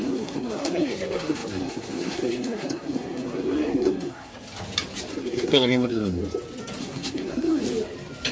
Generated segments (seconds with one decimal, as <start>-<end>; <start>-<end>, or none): 0.0-4.3; 5.2-6.2; 6.8-7.6